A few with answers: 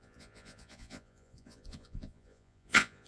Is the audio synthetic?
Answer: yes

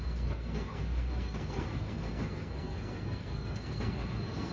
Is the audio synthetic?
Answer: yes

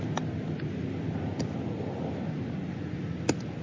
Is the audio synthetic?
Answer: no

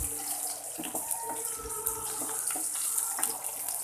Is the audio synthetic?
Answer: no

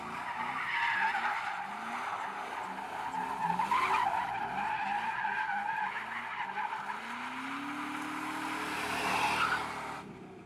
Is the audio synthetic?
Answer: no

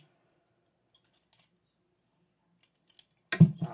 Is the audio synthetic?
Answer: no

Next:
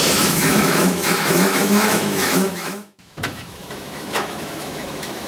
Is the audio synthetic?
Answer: yes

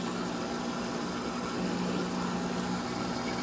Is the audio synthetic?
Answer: no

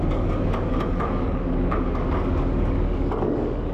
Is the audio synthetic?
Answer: yes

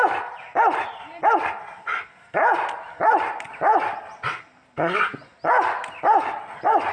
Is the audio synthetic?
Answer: no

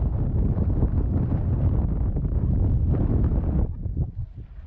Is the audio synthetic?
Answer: no